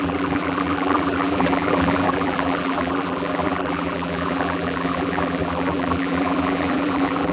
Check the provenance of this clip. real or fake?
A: fake